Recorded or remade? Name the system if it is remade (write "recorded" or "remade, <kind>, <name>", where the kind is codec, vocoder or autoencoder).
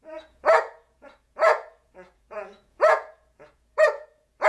remade, vocoder, Vocos